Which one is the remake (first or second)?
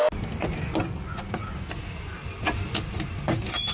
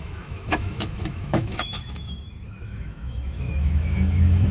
second